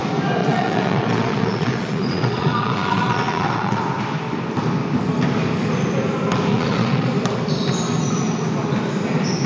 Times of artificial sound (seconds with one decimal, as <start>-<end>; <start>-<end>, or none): 0.4-3.8; 6.5-7.1